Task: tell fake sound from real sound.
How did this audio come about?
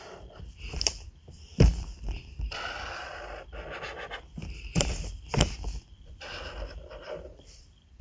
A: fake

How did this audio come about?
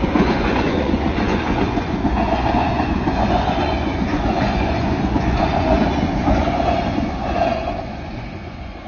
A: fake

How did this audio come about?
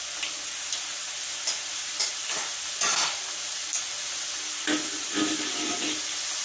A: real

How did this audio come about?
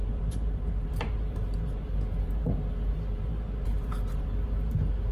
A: fake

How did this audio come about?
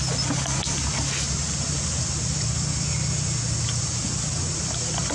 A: real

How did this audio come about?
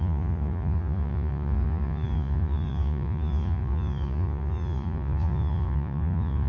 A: fake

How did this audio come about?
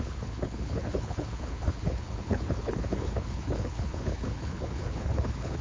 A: fake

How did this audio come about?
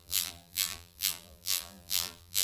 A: fake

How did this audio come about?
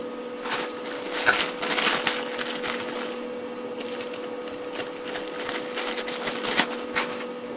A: real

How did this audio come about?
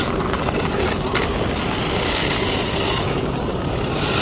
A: real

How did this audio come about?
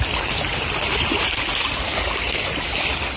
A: real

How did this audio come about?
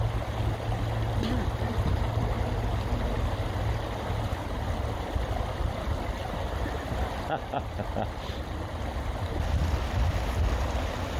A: real